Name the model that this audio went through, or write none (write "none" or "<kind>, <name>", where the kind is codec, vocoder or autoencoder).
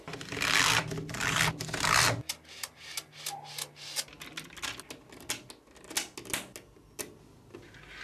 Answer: none